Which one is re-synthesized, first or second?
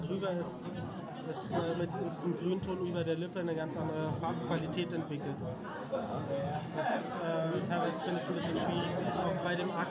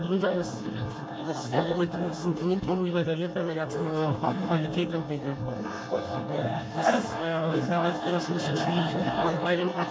second